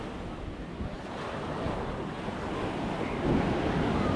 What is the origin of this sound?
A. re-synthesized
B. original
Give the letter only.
B